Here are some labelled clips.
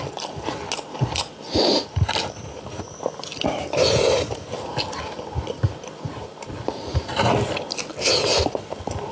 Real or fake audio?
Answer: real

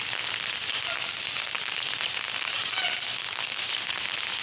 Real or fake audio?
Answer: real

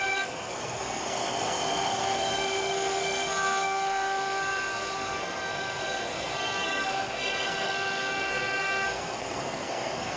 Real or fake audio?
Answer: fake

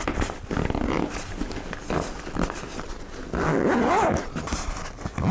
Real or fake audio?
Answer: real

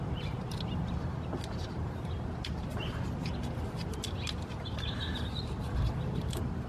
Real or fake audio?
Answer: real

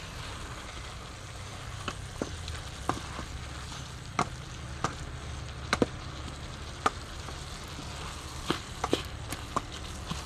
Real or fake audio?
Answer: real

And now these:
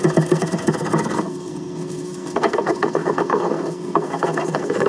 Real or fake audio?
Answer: fake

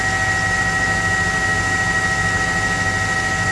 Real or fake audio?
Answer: real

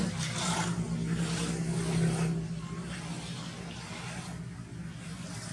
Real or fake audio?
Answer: real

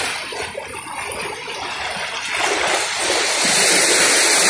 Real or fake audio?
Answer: real